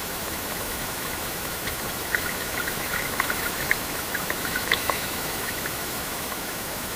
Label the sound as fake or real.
fake